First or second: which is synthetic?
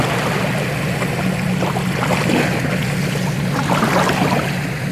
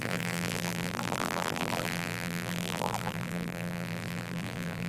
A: second